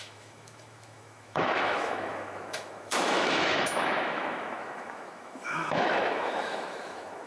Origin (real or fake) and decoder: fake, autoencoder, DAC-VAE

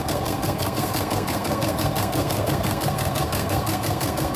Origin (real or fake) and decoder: fake, codec, SNAC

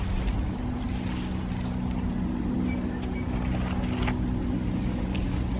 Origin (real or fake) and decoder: real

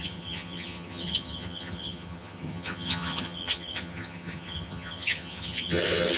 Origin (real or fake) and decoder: fake, vocoder, HiFi-GAN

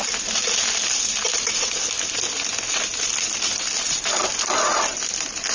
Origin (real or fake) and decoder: real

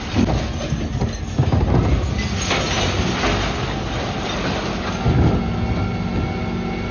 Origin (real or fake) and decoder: real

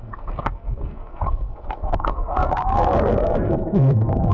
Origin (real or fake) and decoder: fake, codec, SNAC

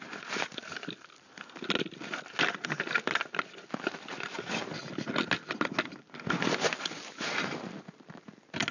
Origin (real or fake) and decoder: real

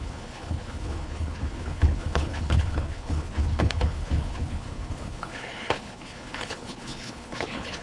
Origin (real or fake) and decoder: fake, codec, HILCodec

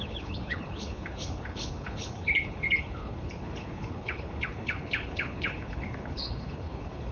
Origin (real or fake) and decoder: fake, codec, HILCodec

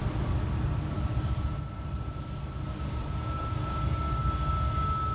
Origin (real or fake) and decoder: real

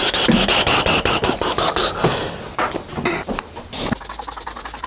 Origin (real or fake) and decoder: real